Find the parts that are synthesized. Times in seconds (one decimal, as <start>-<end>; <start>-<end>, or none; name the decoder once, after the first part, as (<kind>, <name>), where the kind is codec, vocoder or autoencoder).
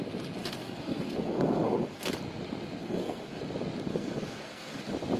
0.4-2.1 (codec, SNAC); 2.8-3.4; 3.9-4.8